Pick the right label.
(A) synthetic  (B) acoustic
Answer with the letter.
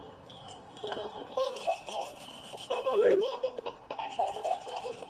A